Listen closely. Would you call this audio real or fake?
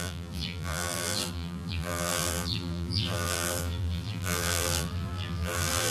fake